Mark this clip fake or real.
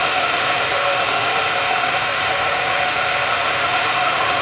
fake